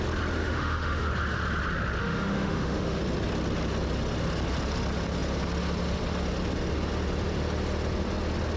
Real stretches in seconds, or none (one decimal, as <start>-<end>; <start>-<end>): 0.0-0.4; 1.1-2.0; 3.0-8.6